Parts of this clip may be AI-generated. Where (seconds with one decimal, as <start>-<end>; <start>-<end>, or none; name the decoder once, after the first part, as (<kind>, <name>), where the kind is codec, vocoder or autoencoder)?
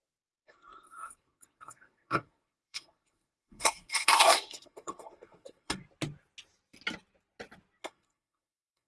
0.0-5.8 (codec, SNAC); 7.8-8.9